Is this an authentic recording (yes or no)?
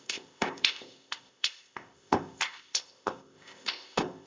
no